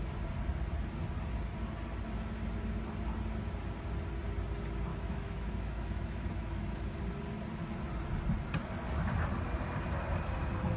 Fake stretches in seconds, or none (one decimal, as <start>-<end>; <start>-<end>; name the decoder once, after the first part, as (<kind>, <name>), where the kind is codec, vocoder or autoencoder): 4.9-7.0 (autoencoder, DAC-VAE)